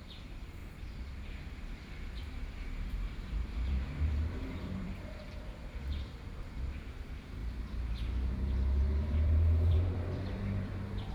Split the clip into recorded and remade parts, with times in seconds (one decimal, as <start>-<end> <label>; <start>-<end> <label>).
0.0-0.6 remade; 0.6-2.2 recorded; 2.2-7.4 remade; 7.4-8.3 recorded; 8.3-11.1 remade